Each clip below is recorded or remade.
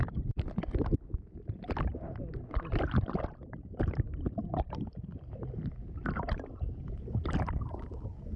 recorded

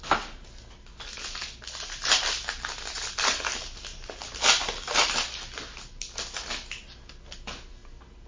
recorded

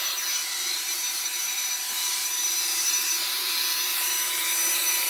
remade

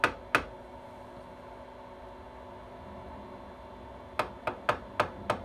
recorded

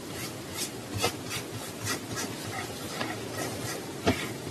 remade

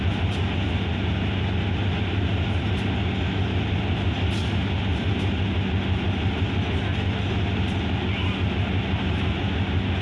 recorded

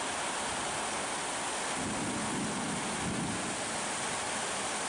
recorded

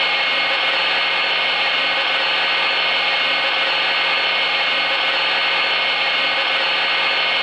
recorded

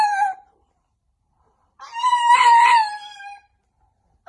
remade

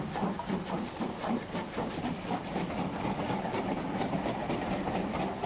remade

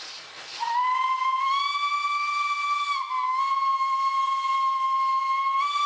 recorded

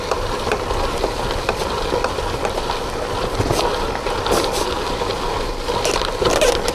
recorded